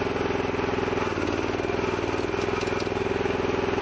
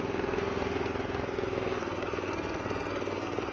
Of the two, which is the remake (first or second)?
second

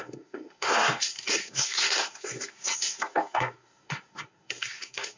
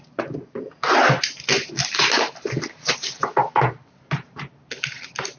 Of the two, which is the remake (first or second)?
first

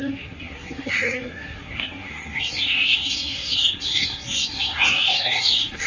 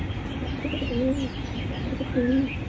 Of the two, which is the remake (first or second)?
first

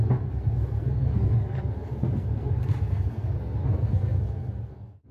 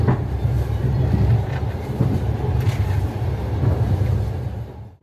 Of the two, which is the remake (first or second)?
first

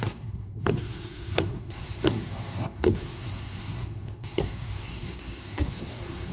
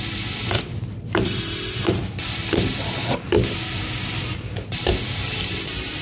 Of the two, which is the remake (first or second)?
first